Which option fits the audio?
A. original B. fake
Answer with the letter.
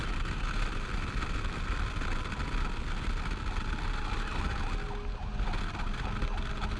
A